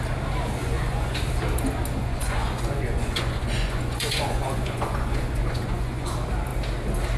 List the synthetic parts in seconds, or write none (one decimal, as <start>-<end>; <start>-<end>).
0.6-1.2; 2.0-6.1